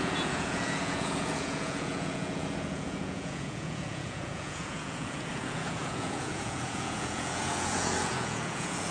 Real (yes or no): no